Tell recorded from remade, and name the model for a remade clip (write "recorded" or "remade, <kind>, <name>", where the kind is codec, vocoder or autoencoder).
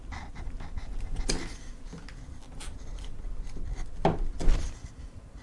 recorded